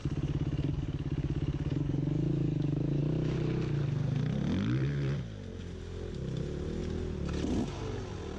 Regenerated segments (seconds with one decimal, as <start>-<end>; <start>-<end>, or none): 0.0-3.0